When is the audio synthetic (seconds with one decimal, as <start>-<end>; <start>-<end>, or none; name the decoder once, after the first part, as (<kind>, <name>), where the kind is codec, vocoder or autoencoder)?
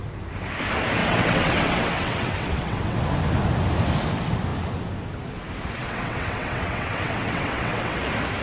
1.0-3.0 (vocoder, WaveNeXt); 5.8-8.0